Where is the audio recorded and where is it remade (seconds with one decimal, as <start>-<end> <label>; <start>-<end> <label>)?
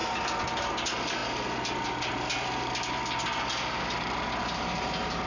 0.0-5.3 recorded